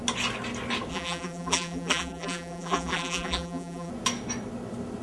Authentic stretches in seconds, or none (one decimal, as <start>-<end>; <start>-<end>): 0.0-0.9; 3.9-5.0